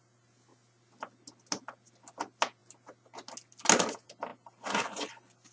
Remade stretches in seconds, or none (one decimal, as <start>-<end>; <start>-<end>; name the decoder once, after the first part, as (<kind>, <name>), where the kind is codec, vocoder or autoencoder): none